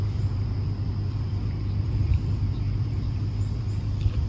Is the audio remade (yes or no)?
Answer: yes